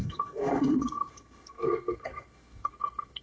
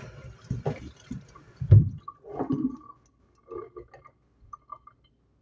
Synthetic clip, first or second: first